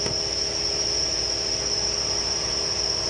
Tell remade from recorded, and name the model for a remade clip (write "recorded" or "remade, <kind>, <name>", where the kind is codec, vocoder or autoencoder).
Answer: recorded